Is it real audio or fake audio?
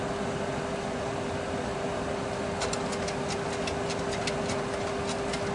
real